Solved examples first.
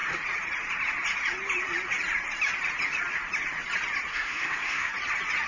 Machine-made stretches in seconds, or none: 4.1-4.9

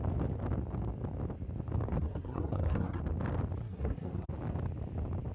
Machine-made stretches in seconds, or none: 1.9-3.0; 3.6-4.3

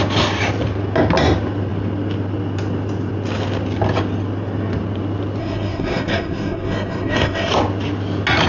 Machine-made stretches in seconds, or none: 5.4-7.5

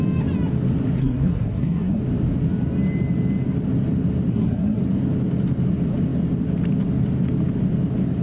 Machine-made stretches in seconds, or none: 1.0-2.0; 4.3-4.8